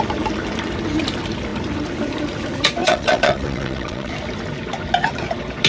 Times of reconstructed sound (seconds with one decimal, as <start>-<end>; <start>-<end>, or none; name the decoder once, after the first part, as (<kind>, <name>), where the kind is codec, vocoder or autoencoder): 2.8-4.1 (vocoder, WaveNeXt)